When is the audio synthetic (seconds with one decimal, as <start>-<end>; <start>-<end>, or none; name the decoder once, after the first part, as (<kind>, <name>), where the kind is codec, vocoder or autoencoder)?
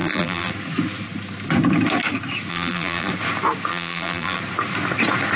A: 0.0-0.5 (vocoder, BigVGAN v2); 2.5-3.1; 3.7-4.4